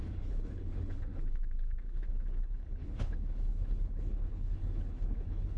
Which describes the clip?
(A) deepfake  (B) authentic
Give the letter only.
A